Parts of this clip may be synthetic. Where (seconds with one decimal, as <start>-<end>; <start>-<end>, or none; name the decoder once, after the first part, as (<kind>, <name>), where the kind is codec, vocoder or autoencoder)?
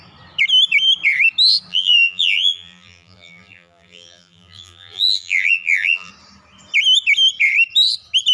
1.7-6.1 (vocoder, BigVGAN v2)